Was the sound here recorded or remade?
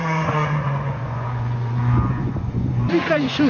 remade